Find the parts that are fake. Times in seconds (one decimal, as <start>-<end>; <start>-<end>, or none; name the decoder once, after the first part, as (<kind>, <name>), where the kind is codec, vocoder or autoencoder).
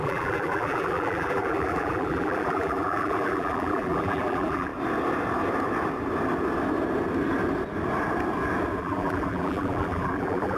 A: 0.0-4.7 (vocoder, BigVGAN v2); 8.8-10.6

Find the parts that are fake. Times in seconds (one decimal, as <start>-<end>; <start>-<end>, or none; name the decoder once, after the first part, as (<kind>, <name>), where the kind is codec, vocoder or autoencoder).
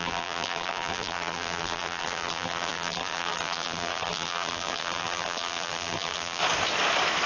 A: 0.0-6.4 (vocoder, BigVGAN v2)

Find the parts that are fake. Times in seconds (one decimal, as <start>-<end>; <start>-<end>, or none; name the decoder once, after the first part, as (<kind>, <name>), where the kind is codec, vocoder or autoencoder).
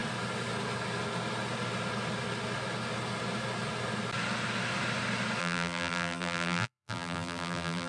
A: 5.4-7.9 (vocoder, BigVGAN v2)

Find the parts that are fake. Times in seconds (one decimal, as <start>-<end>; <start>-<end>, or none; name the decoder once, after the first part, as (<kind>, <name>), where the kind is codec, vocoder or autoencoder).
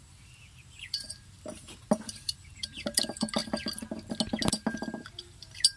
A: 0.0-3.4 (vocoder, BigVGAN v2); 4.5-5.8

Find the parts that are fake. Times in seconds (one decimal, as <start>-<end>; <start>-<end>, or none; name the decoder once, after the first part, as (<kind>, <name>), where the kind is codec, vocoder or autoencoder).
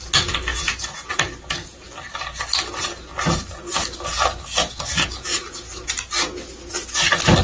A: 0.5-1.2 (vocoder, BigVGAN v2)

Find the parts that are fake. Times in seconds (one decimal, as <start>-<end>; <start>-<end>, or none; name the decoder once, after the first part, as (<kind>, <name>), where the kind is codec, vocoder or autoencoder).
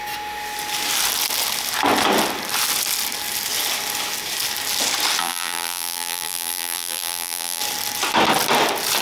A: 5.2-7.6 (vocoder, BigVGAN v2)